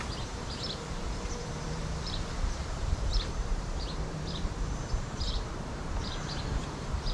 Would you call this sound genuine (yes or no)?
no